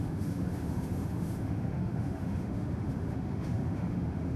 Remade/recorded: remade